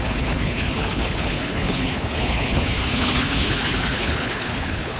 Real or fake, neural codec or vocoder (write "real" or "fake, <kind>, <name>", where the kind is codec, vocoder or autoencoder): fake, codec, HILCodec